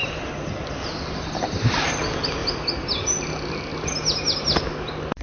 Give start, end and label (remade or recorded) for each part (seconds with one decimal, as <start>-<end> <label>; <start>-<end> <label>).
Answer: 0.0-5.2 recorded